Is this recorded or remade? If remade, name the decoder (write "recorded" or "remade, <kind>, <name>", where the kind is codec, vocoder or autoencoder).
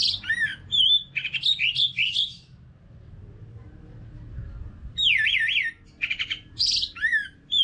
recorded